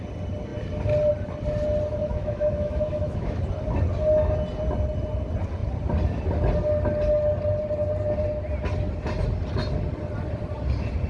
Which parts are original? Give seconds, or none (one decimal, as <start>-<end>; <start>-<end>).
0.0-2.0; 3.4-11.1